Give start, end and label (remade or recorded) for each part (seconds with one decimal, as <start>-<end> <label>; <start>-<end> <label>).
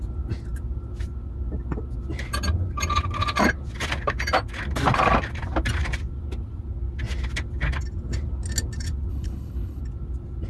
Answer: 0.0-9.1 recorded; 9.1-9.8 remade; 9.8-10.5 recorded